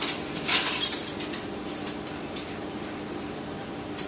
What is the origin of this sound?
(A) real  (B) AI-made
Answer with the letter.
B